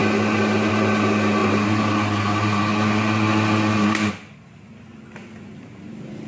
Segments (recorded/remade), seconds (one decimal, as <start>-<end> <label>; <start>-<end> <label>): 0.0-6.3 recorded